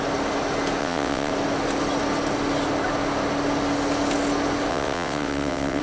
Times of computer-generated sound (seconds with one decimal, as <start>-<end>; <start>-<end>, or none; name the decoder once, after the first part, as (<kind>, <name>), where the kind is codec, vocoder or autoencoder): 0.8-1.3 (vocoder, WaveNeXt); 4.7-5.8